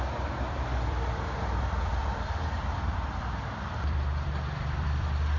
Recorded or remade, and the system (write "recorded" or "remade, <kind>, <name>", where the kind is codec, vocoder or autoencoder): remade, vocoder, BigVGAN v2